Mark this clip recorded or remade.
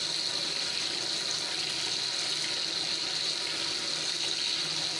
recorded